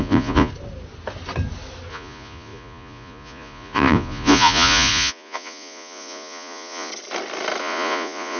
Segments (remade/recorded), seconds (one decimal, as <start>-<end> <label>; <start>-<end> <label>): 0.0-0.5 remade; 0.5-1.9 recorded; 1.9-6.9 remade; 6.9-7.6 recorded; 7.6-8.4 remade